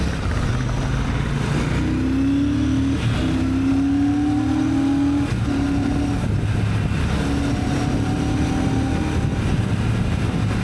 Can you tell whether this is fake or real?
real